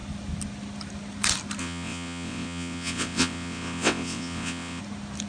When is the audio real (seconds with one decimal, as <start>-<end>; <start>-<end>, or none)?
0.0-1.6; 4.8-5.3